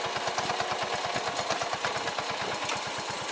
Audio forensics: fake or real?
real